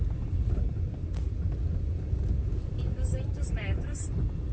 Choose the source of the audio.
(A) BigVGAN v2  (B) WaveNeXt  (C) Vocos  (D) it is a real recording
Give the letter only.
A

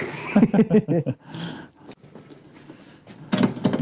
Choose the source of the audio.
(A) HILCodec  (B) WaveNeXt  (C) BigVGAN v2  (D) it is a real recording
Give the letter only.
D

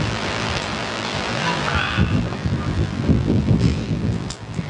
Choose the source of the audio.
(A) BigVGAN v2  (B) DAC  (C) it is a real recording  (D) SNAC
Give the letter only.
A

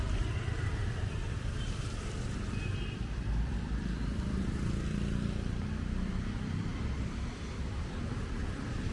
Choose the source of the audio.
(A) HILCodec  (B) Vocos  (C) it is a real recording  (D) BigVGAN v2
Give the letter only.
D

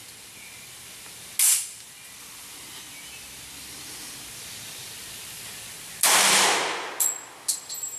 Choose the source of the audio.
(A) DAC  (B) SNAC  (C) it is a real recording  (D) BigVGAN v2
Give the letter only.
C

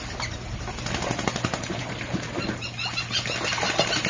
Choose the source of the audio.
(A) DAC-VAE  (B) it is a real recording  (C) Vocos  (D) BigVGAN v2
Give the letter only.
B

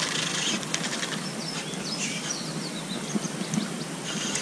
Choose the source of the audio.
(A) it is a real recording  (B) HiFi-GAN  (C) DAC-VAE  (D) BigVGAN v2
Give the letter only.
A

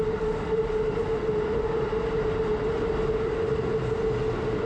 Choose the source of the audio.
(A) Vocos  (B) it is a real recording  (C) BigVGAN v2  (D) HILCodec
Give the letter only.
B